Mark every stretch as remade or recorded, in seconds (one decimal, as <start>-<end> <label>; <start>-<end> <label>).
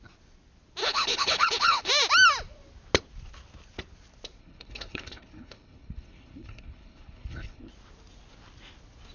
0.0-0.8 recorded; 0.8-1.9 remade; 1.9-4.4 recorded; 4.4-7.7 remade; 7.7-9.1 recorded